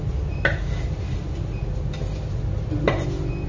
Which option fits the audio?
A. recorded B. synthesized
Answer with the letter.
A